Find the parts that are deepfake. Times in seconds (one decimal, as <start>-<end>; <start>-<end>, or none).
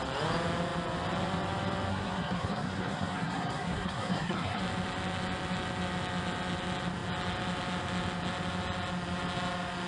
1.9-4.6